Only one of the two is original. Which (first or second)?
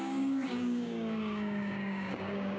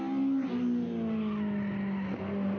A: second